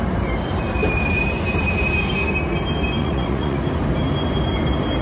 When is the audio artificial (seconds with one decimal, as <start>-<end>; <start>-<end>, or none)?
3.0-3.6